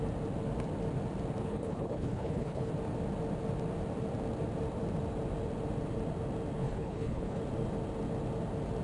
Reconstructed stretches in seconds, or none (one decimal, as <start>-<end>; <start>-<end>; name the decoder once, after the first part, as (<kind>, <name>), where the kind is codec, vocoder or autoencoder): 1.4-2.7 (codec, HILCodec); 6.6-7.4